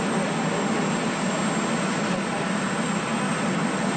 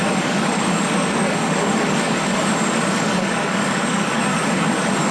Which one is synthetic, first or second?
second